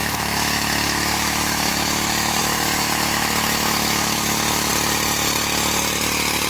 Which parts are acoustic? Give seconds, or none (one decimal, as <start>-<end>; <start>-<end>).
4.7-6.5